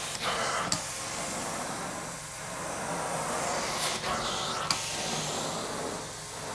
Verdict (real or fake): real